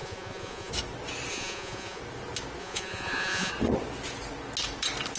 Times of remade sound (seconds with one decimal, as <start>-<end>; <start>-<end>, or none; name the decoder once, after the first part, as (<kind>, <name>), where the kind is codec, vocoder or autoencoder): 0.0-0.7 (vocoder, Vocos); 1.3-2.0; 2.6-3.5